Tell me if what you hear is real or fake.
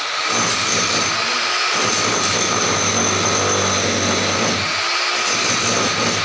real